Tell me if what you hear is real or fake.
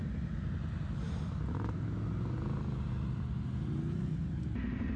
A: real